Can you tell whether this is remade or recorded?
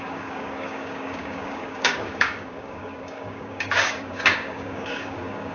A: remade